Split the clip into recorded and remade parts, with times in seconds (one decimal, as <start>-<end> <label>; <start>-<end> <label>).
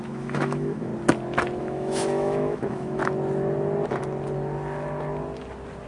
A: 0.0-0.9 remade; 0.9-1.6 recorded; 1.6-3.0 remade; 3.0-5.9 recorded